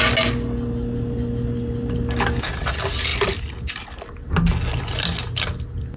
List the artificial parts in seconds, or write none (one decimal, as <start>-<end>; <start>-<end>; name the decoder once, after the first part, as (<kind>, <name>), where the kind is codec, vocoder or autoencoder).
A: none